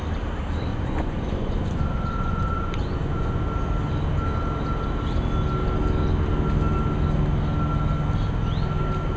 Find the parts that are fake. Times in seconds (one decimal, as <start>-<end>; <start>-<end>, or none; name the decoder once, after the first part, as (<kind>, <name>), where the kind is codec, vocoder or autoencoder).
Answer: 0.7-3.4 (vocoder, Vocos)